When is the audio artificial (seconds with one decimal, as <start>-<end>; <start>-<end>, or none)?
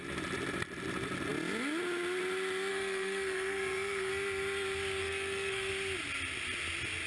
2.7-4.1; 5.0-5.7